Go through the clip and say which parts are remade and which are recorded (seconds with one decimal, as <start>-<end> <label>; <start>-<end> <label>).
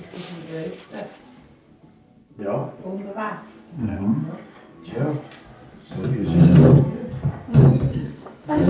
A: 0.0-7.9 recorded; 7.9-8.7 remade